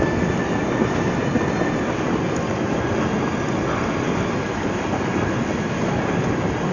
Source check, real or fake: real